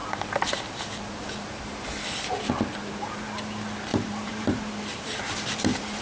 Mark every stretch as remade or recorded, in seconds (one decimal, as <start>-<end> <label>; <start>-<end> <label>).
0.0-3.9 recorded; 3.9-6.0 remade